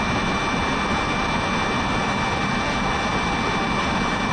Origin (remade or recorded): recorded